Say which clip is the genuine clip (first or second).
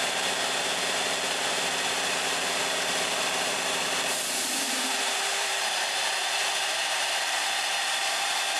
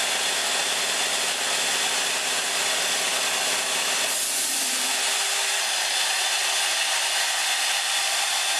second